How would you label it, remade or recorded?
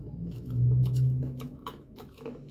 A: remade